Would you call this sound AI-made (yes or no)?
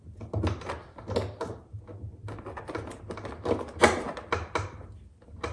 no